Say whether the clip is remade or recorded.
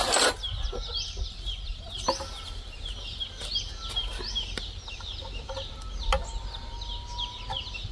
recorded